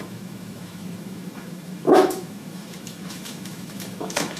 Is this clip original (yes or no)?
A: no